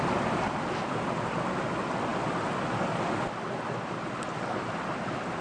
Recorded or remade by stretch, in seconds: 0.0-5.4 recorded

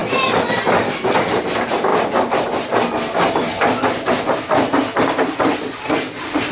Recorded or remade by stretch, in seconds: 0.0-6.5 recorded

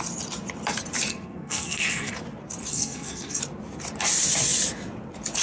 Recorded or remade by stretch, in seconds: 0.0-1.1 recorded; 1.1-2.1 remade; 2.1-2.7 recorded; 2.7-3.4 remade; 3.4-5.4 recorded

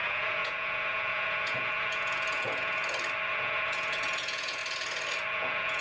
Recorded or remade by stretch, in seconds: 0.0-2.8 remade; 2.8-3.3 recorded; 3.3-4.6 remade; 4.6-5.3 recorded; 5.3-5.8 remade

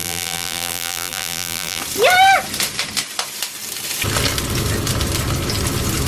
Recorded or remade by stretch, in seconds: 0.0-1.8 remade; 1.8-6.1 recorded

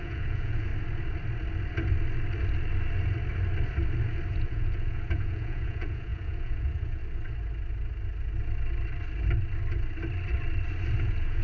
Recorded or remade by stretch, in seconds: 0.0-0.7 remade; 0.7-4.3 recorded; 4.3-7.0 remade; 7.0-11.0 recorded; 11.0-11.4 remade